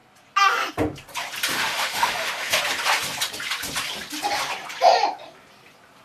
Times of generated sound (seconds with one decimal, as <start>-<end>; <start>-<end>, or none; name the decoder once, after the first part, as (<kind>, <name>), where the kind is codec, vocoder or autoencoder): 1.5-2.6 (autoencoder, DAC-VAE)